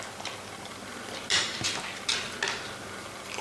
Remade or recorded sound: recorded